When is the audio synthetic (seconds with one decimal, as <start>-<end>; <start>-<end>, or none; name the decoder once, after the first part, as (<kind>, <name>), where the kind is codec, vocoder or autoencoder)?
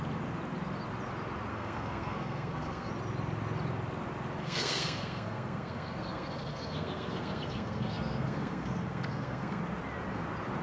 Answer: 1.5-2.9 (codec, SNAC); 4.4-9.6